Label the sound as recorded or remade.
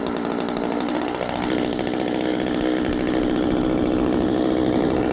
recorded